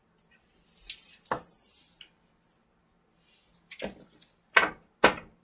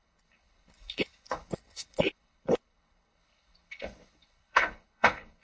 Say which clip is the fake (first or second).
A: second